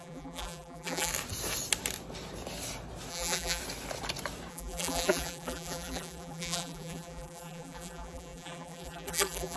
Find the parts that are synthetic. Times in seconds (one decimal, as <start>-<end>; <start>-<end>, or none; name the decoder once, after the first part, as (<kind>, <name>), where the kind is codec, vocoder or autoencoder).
0.0-1.1 (vocoder, BigVGAN v2); 3.1-3.6; 4.5-9.6